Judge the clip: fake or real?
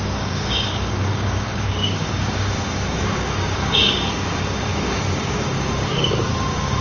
fake